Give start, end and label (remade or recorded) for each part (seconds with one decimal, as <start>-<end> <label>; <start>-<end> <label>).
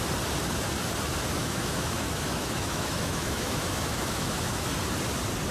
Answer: 0.0-1.4 recorded; 1.4-4.7 remade; 4.7-5.5 recorded